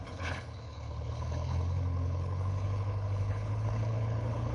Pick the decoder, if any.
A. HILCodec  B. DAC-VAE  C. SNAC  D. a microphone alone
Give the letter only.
A